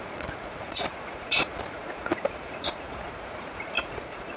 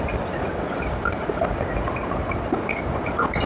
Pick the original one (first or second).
second